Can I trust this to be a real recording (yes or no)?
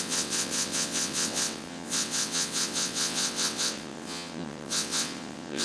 no